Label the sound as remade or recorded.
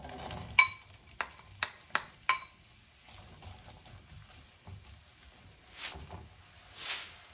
recorded